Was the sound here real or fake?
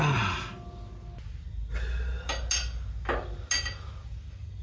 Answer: real